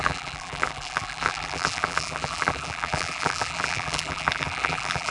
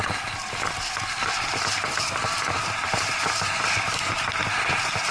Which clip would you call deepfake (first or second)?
first